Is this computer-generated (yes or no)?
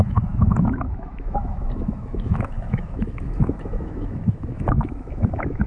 yes